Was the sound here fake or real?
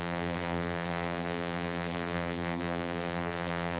fake